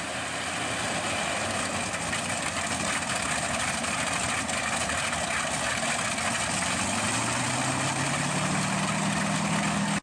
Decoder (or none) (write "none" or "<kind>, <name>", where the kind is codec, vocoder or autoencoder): none